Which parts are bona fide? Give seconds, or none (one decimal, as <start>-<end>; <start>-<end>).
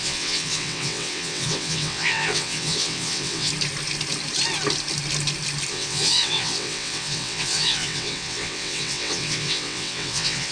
3.5-5.7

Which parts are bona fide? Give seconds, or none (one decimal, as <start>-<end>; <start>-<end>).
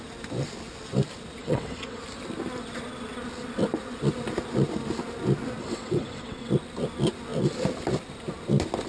0.0-1.4; 2.0-5.6; 6.5-8.9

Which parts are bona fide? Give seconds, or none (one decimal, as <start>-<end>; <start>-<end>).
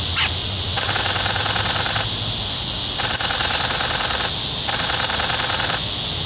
0.0-0.4; 0.9-6.3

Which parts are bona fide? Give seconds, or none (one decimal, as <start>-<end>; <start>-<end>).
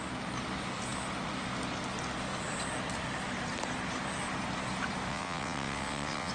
0.0-5.1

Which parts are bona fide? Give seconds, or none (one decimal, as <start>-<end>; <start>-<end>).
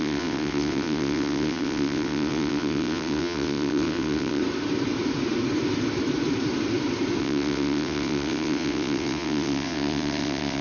4.4-7.2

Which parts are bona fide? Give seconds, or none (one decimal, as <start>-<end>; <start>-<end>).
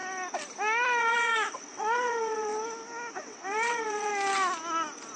0.0-1.0; 2.5-3.3; 4.1-5.2